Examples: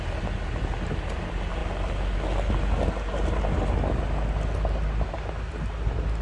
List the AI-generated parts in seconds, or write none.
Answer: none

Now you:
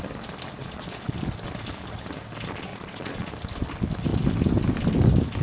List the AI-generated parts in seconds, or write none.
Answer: 0.6-1.1 (vocoder, Vocos); 2.7-3.3

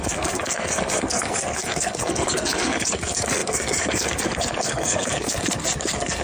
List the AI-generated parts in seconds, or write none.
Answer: 0.0-6.2 (codec, SNAC)

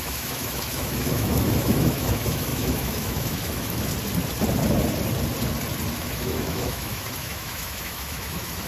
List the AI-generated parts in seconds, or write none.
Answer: 0.0-3.9 (autoencoder, DAC-VAE); 5.9-8.7

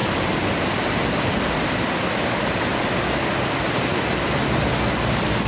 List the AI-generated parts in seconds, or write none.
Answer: none

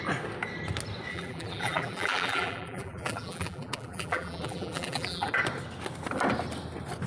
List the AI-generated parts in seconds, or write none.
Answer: 1.1-5.3 (vocoder, BigVGAN v2)